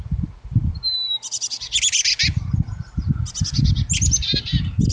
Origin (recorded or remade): recorded